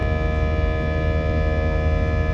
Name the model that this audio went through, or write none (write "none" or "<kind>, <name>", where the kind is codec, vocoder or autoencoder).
none